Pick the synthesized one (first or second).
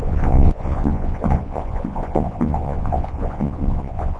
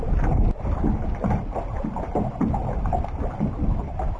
first